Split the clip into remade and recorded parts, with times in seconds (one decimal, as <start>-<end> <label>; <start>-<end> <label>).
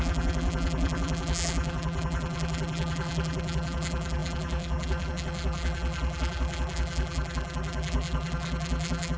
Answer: 0.0-9.2 remade